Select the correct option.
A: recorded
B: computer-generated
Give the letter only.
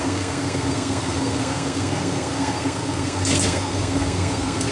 B